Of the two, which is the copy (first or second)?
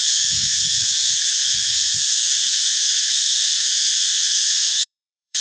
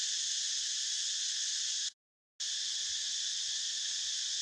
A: first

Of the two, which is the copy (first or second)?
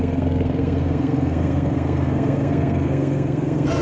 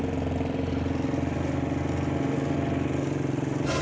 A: first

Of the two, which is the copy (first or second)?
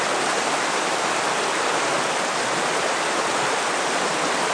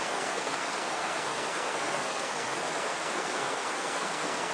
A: second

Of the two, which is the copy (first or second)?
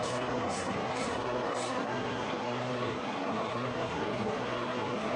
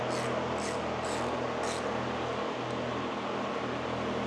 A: first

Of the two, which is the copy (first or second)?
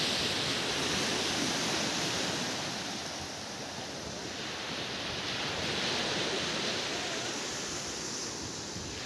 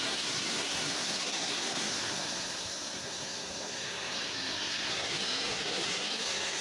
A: second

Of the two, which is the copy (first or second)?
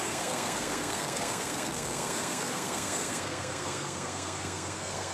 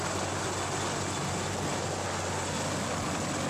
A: first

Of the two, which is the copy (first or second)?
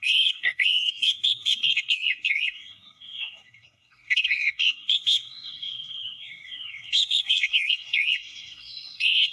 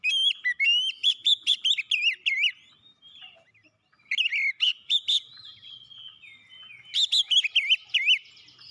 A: first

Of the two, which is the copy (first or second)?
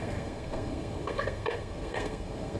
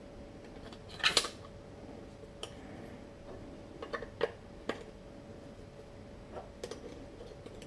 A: first